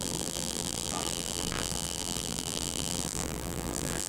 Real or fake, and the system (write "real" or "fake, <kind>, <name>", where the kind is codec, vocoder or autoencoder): fake, vocoder, BigVGAN v2